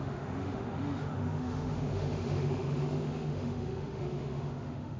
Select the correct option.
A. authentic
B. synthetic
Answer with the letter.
B